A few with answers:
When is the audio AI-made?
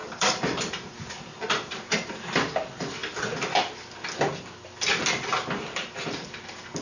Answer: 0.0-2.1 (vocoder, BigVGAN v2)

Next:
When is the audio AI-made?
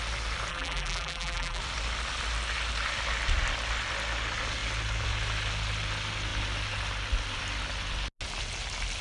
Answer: 0.5-1.6 (vocoder, BigVGAN v2)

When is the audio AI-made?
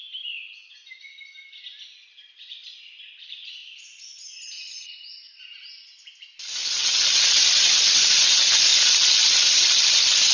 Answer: none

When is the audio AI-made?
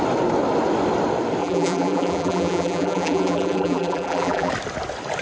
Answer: 1.4-4.5 (vocoder, BigVGAN v2)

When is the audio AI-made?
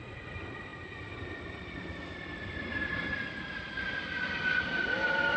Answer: 0.0-5.4 (vocoder, BigVGAN v2)